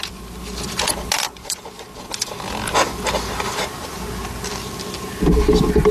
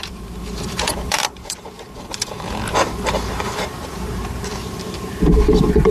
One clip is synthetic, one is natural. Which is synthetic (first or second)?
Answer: second